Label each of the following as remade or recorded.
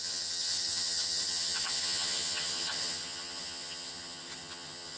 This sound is remade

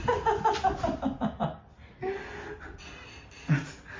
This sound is recorded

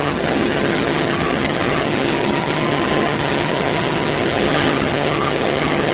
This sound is remade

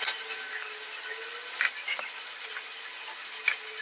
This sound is recorded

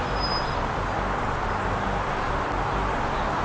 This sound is recorded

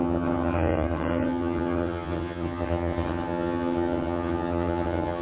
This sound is remade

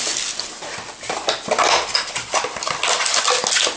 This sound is recorded